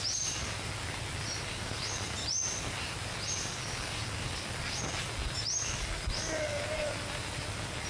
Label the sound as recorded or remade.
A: recorded